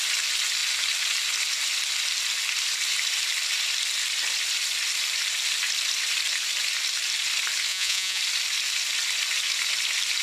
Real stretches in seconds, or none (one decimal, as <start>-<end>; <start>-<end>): 0.0-7.7; 8.2-10.2